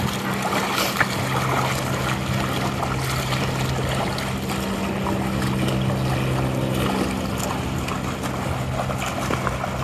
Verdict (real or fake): real